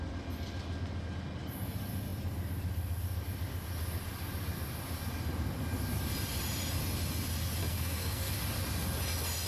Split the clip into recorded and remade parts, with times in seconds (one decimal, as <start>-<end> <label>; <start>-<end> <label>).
0.0-7.6 recorded; 7.6-8.3 remade; 8.3-9.5 recorded